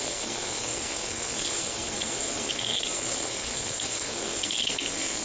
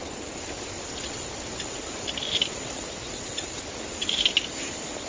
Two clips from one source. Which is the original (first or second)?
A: second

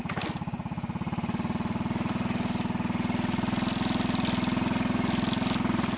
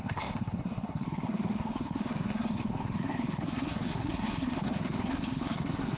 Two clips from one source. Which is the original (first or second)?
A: first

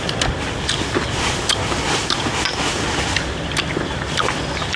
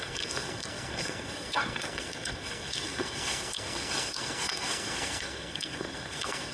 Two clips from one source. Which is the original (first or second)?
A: first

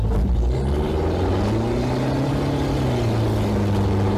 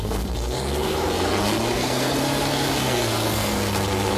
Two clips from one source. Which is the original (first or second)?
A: first